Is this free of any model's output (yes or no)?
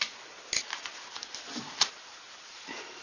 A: yes